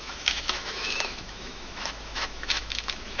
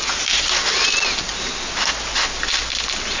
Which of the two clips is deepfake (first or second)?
first